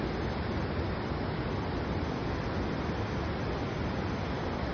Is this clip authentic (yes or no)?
yes